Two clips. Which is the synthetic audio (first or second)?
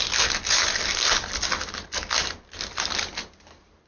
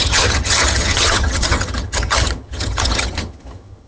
second